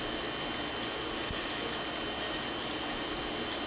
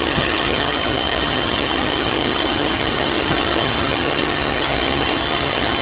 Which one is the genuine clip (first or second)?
first